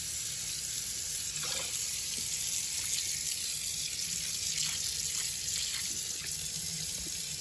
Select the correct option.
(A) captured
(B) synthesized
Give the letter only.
A